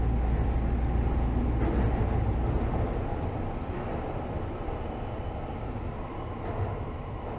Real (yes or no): yes